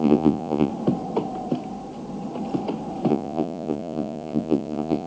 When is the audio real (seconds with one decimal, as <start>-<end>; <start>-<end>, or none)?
0.7-3.1

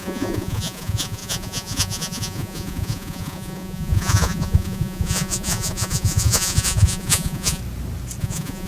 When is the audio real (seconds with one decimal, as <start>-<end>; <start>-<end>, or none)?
7.6-8.2

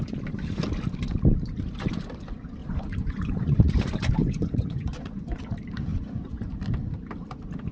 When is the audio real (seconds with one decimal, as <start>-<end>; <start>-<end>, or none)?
0.0-2.6; 3.6-4.2; 5.4-5.9; 6.5-7.7

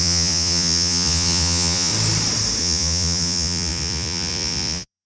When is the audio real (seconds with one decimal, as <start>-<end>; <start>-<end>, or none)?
1.9-2.6